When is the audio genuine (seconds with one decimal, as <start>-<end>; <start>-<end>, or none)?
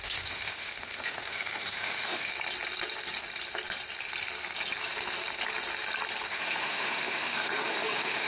2.3-6.3